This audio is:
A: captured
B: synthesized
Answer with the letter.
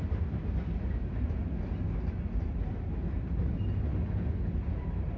A